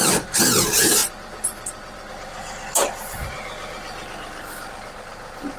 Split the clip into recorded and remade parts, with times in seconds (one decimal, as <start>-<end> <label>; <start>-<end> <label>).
0.0-5.6 recorded